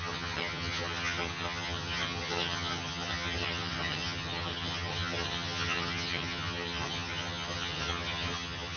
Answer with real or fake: fake